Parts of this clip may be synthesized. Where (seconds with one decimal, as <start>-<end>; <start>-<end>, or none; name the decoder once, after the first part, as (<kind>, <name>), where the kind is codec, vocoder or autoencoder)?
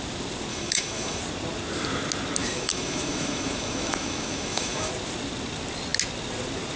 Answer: 0.5-1.2 (autoencoder, DAC-VAE); 2.4-4.9